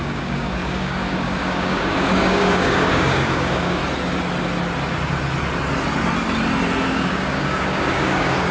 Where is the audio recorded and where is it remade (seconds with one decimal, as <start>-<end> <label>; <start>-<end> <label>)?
0.0-3.8 remade; 3.8-6.8 recorded; 6.8-8.5 remade